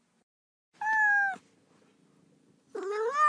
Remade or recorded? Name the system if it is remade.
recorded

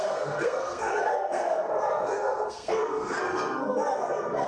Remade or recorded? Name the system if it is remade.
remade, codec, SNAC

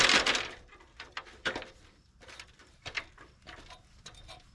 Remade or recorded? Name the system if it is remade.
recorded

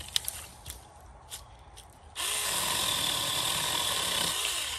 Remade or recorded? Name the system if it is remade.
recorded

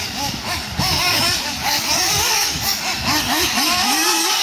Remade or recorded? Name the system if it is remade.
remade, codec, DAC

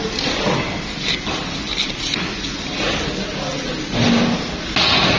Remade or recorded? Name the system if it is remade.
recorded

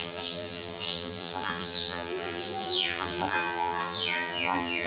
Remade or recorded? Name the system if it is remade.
remade, vocoder, BigVGAN v2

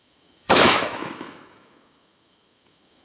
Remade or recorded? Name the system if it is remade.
remade, autoencoder, DAC-VAE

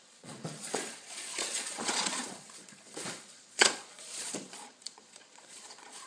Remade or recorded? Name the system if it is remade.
remade, vocoder, Vocos